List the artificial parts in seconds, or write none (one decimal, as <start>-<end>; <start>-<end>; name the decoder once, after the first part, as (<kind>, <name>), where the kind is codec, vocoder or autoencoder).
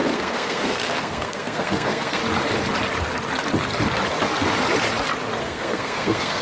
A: 0.0-2.2 (codec, SNAC); 5.4-6.4